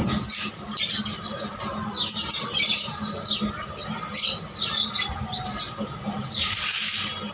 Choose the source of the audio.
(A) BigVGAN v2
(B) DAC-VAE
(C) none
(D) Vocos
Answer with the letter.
C